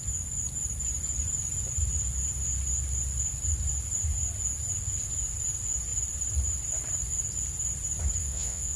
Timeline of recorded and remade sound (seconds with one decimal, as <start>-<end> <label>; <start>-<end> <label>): 0.0-8.2 recorded; 8.2-8.8 remade